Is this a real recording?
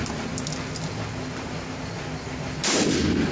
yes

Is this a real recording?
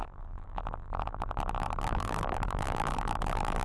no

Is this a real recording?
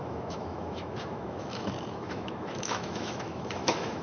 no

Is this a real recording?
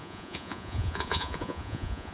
no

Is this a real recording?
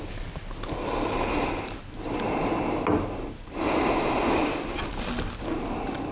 yes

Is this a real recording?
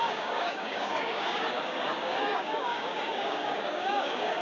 no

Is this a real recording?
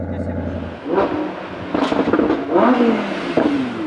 yes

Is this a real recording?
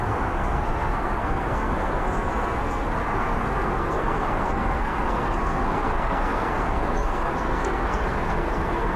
no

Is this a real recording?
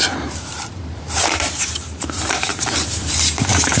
no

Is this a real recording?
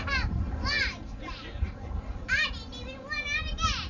yes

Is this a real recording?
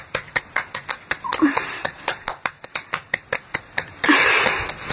yes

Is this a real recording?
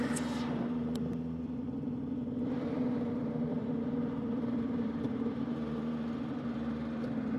no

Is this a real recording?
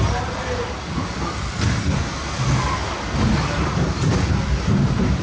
yes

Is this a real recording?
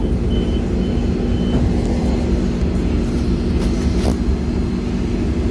yes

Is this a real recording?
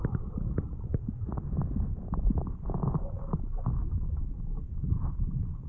yes